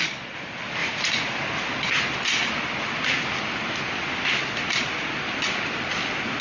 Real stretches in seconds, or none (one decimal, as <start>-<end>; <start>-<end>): 0.0-0.8; 1.4-6.4